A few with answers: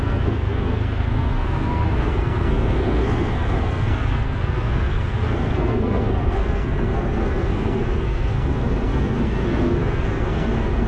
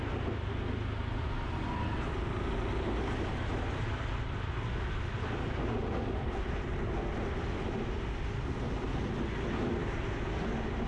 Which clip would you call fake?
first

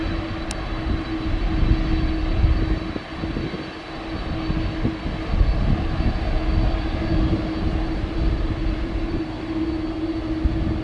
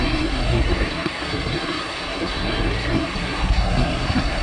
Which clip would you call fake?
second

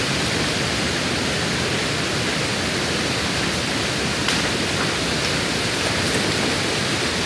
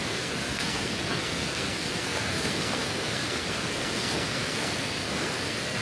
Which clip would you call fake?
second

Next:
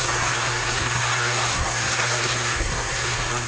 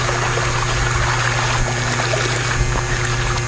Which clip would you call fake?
first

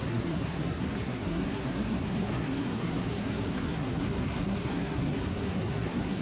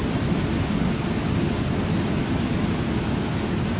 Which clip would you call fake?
first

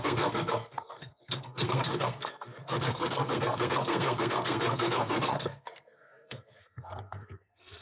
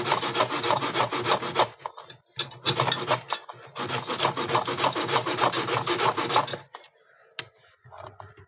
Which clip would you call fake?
first